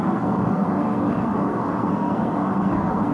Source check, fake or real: fake